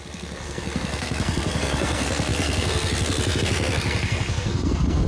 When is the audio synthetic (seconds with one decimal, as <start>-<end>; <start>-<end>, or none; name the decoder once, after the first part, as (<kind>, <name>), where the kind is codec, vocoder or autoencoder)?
0.0-5.1 (codec, SNAC)